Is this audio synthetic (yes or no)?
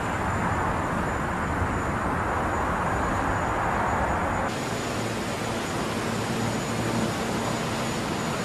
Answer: no